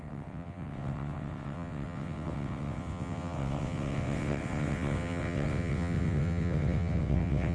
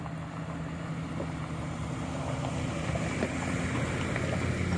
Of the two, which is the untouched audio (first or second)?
second